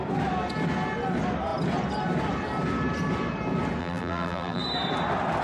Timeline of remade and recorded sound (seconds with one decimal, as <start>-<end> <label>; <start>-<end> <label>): 0.0-3.8 recorded; 3.8-4.6 remade; 4.6-5.4 recorded